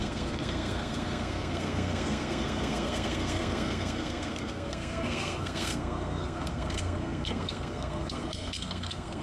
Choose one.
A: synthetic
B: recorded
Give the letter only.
A